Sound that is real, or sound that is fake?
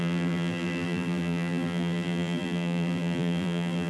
fake